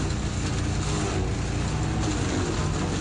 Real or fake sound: real